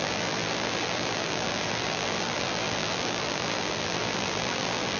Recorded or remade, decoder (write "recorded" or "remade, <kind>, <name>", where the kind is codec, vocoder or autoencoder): remade, vocoder, BigVGAN v2